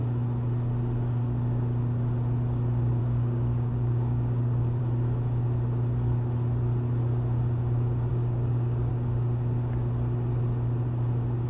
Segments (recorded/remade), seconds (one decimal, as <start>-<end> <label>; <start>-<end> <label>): 0.0-3.0 recorded; 3.0-4.8 remade; 4.8-8.1 recorded; 8.1-8.9 remade; 8.9-11.5 recorded